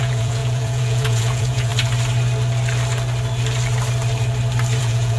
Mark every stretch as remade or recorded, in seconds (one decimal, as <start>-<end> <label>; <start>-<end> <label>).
0.0-1.7 remade; 1.7-4.8 recorded; 4.8-5.2 remade